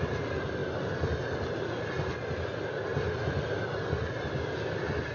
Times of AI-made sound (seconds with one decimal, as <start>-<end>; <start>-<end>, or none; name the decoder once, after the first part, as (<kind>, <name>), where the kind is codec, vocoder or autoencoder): none